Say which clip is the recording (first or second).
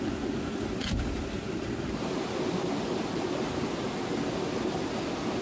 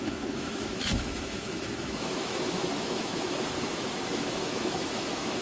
first